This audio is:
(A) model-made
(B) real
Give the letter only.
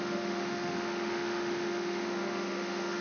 A